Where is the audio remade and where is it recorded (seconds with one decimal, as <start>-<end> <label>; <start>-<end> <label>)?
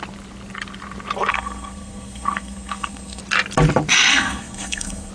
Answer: 0.0-1.3 recorded; 1.3-3.2 remade; 3.2-4.1 recorded; 4.1-5.1 remade